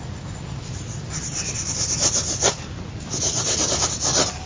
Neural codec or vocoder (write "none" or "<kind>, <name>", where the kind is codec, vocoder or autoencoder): none